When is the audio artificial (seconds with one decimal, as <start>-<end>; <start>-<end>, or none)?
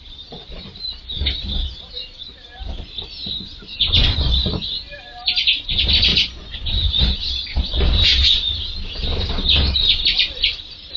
3.2-4.8; 6.1-7.0